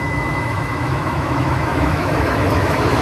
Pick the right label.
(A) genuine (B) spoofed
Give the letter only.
B